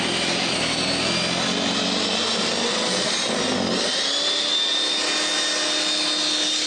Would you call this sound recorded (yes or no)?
yes